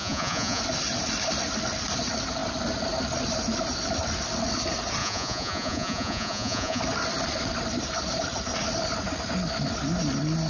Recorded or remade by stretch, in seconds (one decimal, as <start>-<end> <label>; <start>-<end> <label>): 0.0-0.6 remade; 0.6-5.0 recorded; 5.0-6.8 remade; 6.8-10.5 recorded